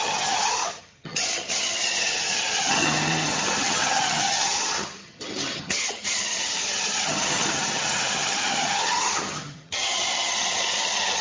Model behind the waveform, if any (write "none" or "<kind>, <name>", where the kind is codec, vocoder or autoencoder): vocoder, HiFi-GAN